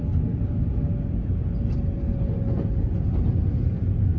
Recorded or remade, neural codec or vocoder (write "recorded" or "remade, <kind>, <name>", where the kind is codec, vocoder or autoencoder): recorded